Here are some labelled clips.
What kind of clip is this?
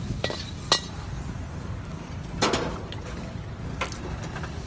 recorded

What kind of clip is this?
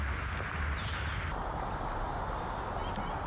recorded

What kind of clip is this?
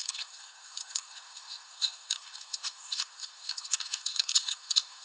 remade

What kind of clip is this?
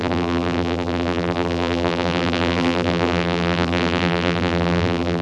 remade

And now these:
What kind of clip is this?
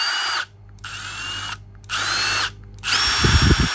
recorded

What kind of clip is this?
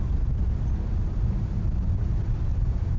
recorded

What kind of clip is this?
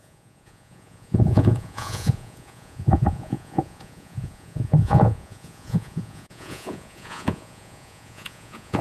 remade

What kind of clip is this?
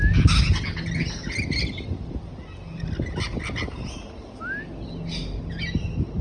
recorded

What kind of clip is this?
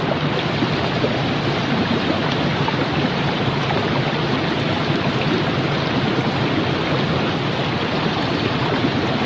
recorded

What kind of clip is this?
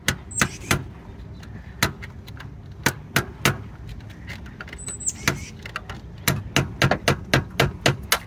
recorded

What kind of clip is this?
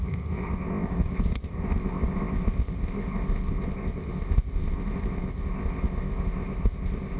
remade